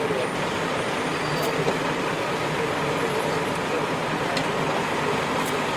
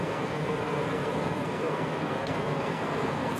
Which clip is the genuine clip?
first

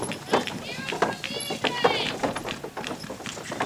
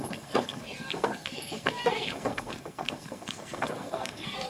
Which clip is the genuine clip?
first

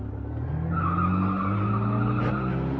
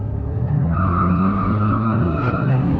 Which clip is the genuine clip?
first